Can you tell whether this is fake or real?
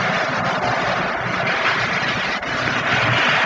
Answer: real